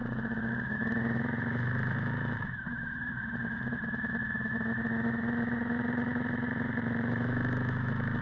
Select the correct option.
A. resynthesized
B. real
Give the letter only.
A